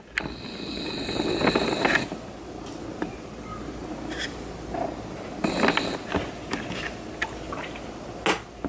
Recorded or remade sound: recorded